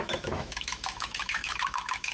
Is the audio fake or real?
fake